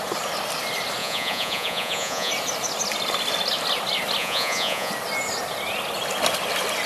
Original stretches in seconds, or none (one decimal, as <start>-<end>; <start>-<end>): 0.0-1.0; 2.3-4.2; 4.9-6.9